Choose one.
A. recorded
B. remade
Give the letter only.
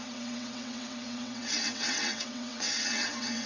B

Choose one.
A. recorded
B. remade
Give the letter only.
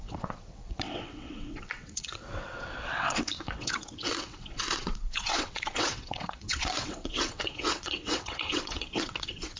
B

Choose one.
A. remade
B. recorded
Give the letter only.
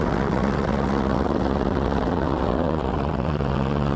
A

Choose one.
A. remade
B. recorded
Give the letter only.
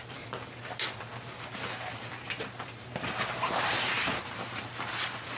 B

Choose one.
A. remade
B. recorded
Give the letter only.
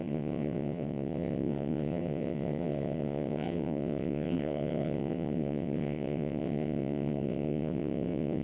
A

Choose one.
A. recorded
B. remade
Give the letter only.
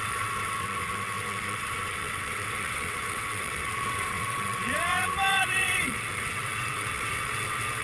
B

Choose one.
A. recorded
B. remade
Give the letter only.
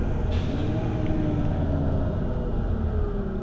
A